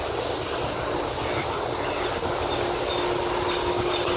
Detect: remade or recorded recorded